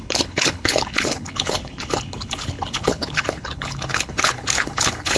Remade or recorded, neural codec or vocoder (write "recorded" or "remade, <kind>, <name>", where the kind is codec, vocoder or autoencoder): remade, codec, HILCodec